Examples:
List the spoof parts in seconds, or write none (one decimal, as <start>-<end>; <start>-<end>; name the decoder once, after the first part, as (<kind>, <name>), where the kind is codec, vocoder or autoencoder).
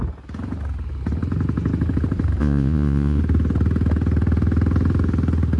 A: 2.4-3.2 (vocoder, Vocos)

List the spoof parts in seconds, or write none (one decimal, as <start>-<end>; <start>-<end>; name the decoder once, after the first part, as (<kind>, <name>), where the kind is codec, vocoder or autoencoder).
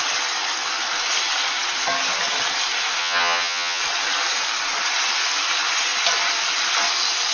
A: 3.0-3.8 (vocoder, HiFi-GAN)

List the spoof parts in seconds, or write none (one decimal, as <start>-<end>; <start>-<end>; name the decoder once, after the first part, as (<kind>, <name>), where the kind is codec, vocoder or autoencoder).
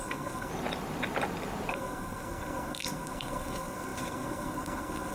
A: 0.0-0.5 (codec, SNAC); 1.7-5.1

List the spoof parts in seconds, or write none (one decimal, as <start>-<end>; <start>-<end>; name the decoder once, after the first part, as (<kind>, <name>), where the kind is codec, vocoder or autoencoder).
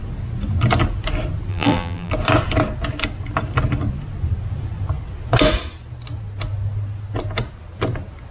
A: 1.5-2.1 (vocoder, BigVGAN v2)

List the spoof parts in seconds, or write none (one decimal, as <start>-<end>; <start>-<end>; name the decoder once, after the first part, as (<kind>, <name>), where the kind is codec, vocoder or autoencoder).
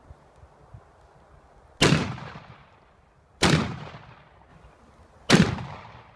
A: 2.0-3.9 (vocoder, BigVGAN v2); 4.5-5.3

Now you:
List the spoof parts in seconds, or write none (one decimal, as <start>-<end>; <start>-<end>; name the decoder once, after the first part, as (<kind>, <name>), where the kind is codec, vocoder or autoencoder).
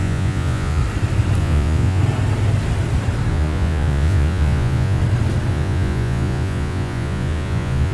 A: 0.0-0.8 (vocoder, Vocos); 1.4-2.0; 3.3-5.0; 5.5-7.9